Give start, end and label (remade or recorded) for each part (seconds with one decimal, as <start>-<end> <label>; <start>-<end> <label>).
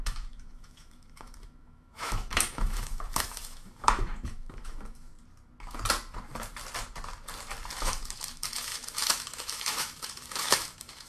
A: 0.0-5.1 remade; 5.1-7.8 recorded; 7.8-11.1 remade